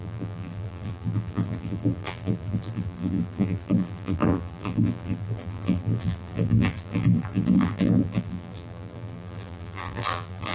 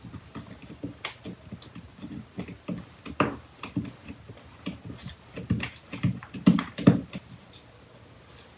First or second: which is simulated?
first